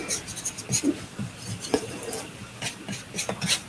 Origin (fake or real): real